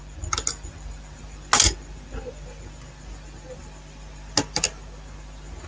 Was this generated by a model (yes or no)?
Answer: no